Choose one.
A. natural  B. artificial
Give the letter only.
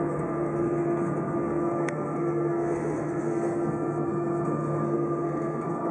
B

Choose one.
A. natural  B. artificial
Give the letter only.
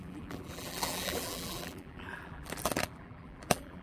B